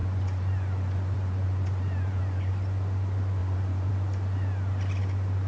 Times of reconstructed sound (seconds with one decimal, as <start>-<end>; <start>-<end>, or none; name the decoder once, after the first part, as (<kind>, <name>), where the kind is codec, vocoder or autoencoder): 0.0-2.5 (vocoder, Vocos); 3.4-3.9